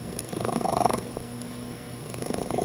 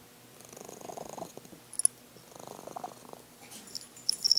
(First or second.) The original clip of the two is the second